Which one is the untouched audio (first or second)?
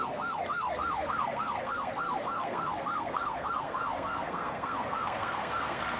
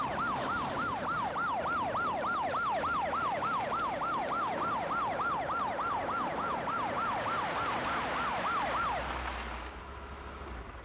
second